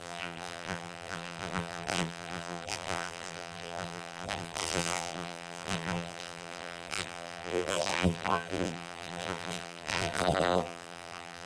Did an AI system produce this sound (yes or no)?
yes